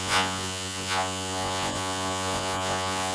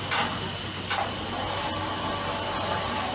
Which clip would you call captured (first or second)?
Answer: second